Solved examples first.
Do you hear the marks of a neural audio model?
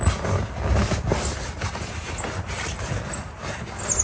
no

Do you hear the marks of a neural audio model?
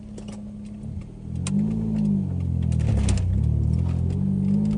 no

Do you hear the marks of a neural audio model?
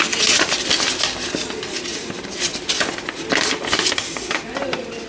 no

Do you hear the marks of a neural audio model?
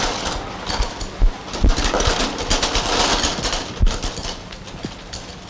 no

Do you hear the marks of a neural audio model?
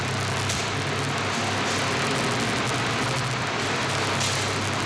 no